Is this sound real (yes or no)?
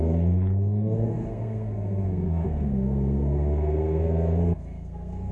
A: no